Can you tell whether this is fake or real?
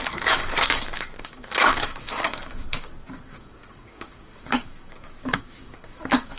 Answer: fake